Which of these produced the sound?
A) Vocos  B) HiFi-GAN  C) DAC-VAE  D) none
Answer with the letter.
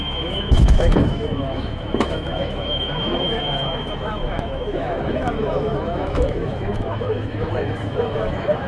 C